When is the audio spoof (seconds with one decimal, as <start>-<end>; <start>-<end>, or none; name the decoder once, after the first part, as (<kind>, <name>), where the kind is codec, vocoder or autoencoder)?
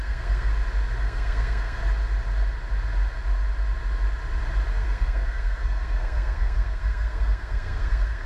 0.0-0.5 (codec, SNAC); 1.0-1.8; 4.7-8.3